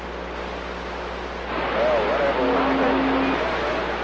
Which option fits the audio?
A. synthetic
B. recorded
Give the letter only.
B